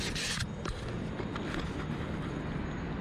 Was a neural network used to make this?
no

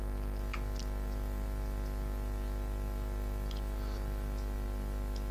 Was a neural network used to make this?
no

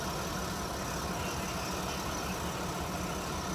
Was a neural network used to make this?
no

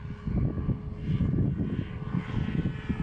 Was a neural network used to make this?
no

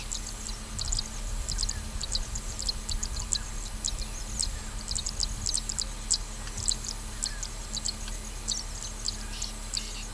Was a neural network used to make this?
no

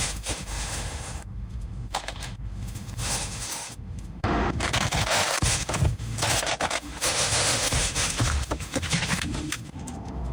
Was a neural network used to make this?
yes